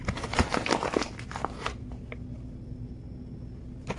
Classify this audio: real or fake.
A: real